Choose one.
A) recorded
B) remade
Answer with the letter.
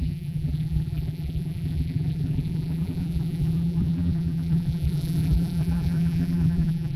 B